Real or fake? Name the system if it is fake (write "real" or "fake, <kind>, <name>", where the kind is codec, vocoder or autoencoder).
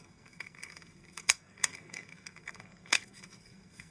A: fake, codec, SNAC